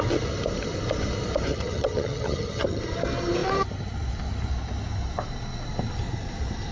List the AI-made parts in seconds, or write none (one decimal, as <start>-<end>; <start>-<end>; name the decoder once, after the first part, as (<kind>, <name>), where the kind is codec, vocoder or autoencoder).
1.5-2.8 (vocoder, HiFi-GAN)